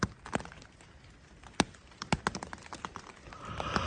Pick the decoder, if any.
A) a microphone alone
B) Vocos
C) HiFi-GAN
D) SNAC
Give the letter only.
A